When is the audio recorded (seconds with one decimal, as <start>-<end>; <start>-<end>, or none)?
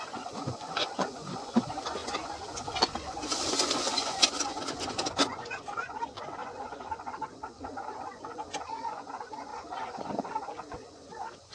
none